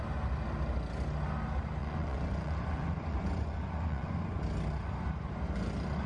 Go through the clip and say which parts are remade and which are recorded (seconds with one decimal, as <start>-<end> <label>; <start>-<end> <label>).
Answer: 0.0-1.8 recorded; 1.8-4.4 remade; 4.4-6.1 recorded